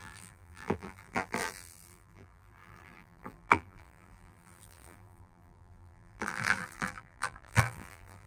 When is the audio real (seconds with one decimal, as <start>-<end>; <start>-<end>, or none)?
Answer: none